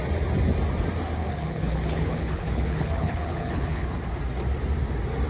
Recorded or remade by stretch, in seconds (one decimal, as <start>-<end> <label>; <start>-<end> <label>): 0.0-1.2 recorded; 1.2-4.0 remade; 4.0-5.3 recorded